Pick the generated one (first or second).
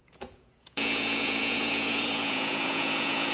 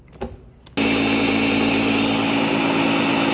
first